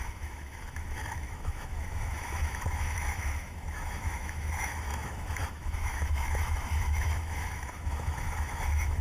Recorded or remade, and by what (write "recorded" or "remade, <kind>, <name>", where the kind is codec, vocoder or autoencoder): remade, autoencoder, DAC-VAE